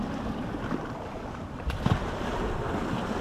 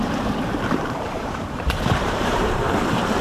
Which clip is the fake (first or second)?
second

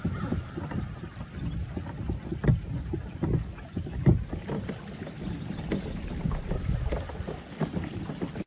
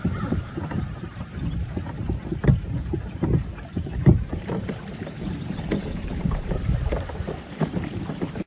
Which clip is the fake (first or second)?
second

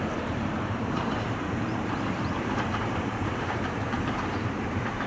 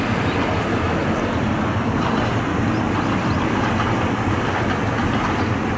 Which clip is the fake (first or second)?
first